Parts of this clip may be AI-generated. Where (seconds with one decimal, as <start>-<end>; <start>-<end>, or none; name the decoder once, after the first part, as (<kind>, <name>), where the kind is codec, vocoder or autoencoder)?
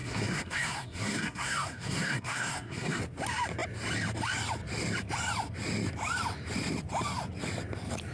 0.0-3.0 (codec, SNAC)